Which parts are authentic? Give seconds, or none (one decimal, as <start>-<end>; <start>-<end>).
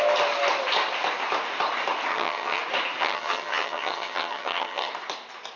0.0-2.1; 2.6-3.0; 4.9-5.6